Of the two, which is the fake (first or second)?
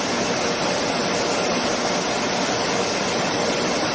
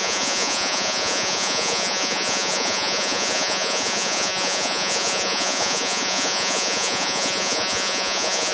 second